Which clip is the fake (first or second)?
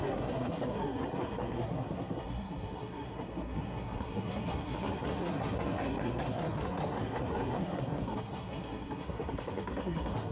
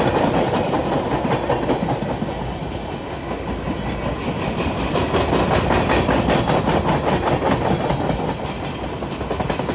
first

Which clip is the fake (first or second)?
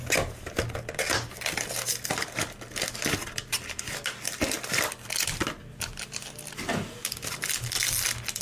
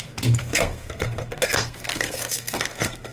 second